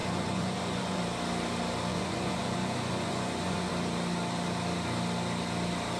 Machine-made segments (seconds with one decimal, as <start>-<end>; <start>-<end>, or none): 0.0-1.0; 1.9-3.7